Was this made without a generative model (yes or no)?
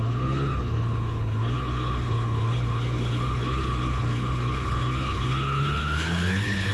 no